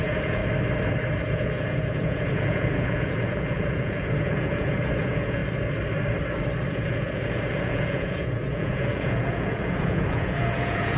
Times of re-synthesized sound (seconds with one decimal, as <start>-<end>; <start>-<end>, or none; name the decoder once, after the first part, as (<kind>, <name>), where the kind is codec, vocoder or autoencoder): 0.0-0.4 (vocoder, Vocos); 1.2-5.4; 6.7-11.0